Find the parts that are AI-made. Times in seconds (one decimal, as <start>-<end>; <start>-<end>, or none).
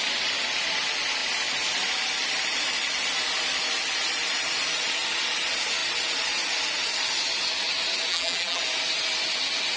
8.1-8.6